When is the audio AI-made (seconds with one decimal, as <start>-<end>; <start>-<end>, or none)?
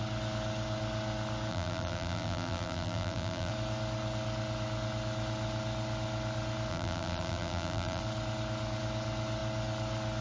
1.5-3.5; 6.7-8.0